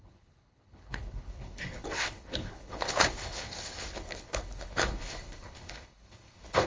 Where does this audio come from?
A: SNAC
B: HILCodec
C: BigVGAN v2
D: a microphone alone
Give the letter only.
B